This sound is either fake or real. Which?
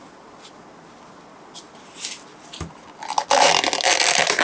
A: real